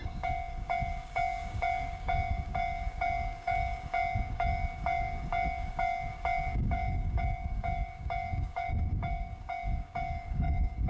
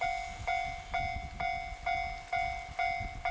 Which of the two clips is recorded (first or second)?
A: second